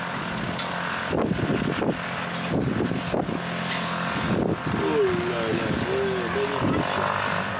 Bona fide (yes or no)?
yes